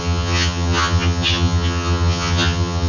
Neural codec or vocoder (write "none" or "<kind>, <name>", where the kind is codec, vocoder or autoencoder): vocoder, HiFi-GAN